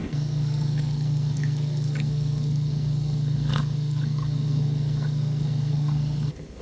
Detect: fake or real fake